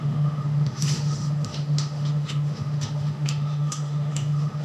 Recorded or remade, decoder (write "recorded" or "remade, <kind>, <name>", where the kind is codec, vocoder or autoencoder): remade, autoencoder, DAC-VAE